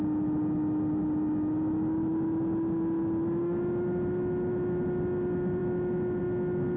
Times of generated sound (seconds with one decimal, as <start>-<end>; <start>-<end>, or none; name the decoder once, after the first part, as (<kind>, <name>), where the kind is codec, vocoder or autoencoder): none